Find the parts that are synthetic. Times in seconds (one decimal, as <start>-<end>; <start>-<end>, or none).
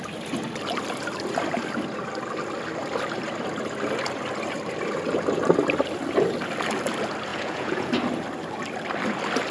7.3-7.9